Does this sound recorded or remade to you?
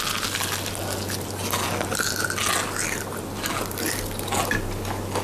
recorded